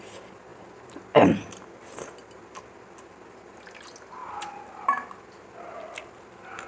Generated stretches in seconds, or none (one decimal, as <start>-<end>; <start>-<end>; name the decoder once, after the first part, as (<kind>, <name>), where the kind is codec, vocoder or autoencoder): none